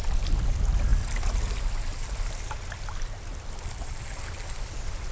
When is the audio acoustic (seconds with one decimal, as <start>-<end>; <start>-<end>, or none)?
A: 0.0-5.1